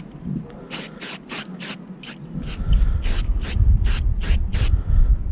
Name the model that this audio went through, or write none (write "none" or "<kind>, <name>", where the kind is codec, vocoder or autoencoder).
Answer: none